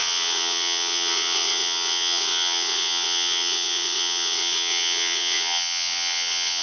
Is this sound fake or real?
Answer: fake